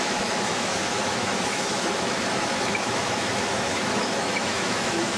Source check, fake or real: fake